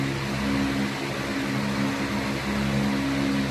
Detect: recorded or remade recorded